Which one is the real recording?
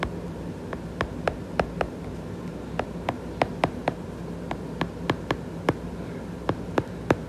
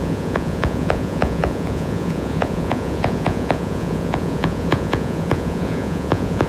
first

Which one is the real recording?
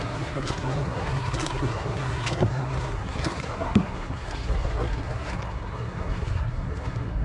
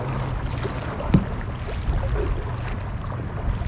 second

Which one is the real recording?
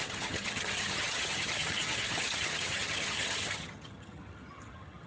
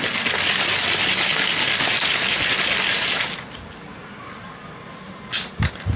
second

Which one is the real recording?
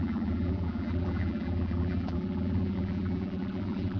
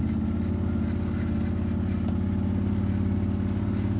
second